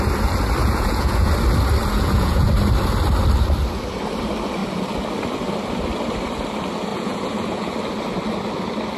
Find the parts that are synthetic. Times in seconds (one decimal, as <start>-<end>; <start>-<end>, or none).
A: 0.6-1.3; 1.9-2.5; 6.9-7.7